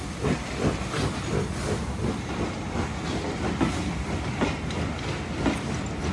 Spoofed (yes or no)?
no